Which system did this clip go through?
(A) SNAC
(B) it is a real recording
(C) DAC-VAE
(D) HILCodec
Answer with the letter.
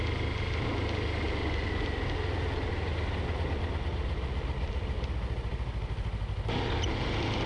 B